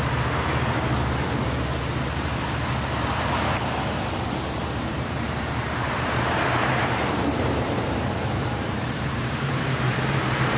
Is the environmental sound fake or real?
fake